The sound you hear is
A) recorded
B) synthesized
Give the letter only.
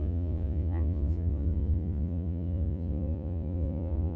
B